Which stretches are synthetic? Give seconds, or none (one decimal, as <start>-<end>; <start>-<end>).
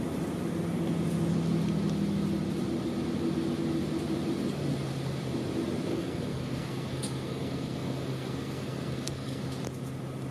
5.9-9.4